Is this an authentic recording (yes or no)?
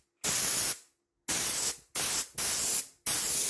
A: yes